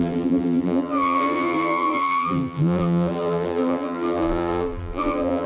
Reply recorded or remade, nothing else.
remade